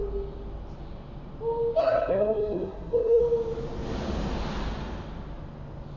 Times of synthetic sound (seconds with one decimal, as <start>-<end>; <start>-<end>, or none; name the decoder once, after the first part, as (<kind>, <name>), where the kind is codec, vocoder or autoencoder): 1.8-3.2 (codec, SNAC)

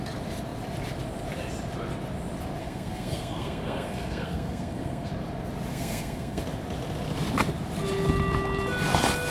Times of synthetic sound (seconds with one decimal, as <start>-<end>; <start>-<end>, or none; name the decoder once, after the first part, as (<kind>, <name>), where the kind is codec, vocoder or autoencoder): 2.6-5.1 (codec, SNAC); 5.7-6.4

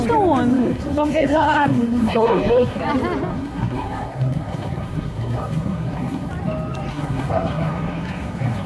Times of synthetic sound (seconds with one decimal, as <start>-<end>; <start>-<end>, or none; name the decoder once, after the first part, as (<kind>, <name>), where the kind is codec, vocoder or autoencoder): 0.5-2.8 (codec, SNAC); 3.3-6.3; 6.9-8.7

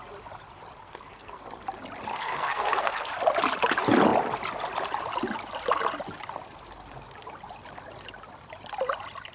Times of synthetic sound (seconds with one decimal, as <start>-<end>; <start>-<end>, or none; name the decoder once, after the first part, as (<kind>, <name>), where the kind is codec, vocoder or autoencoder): 0.8-1.4 (codec, SNAC); 2.1-3.1

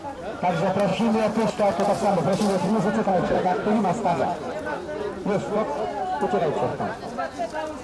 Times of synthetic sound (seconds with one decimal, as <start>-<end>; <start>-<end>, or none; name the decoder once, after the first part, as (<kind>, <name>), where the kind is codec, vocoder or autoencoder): 3.1-3.8 (codec, SNAC)